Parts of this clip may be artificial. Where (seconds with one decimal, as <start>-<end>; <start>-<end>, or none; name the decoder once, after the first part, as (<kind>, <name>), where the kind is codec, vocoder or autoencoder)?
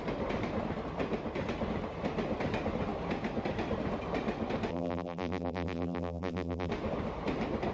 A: 4.7-6.7 (vocoder, BigVGAN v2)